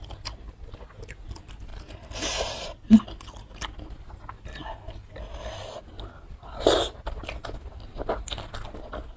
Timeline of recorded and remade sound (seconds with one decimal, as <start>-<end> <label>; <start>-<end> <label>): 0.0-9.2 recorded